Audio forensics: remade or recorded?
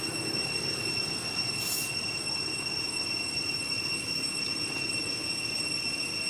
recorded